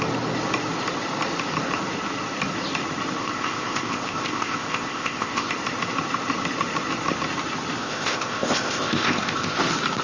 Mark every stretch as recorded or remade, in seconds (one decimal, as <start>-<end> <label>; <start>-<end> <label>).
0.0-3.2 recorded; 3.2-5.5 remade; 5.5-7.8 recorded; 7.8-9.6 remade; 9.6-10.0 recorded